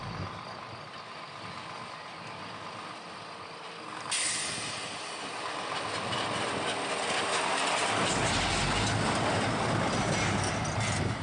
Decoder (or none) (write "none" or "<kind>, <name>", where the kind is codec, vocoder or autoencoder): none